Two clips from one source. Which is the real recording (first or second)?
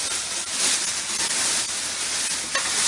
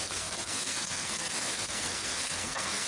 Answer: first